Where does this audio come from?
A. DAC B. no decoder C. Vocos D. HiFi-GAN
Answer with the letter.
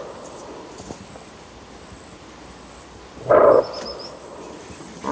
B